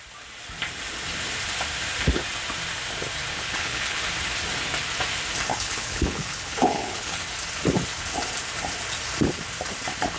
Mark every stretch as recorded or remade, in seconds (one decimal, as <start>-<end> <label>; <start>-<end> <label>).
0.0-3.3 recorded; 3.3-4.0 remade; 4.0-5.5 recorded; 5.5-7.2 remade; 7.2-10.2 recorded